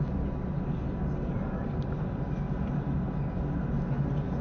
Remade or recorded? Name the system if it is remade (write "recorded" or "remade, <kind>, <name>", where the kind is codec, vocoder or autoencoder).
recorded